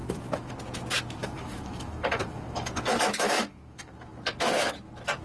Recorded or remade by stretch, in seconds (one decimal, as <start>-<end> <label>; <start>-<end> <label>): 0.0-0.5 remade; 0.5-1.2 recorded; 1.2-4.3 remade; 4.3-5.2 recorded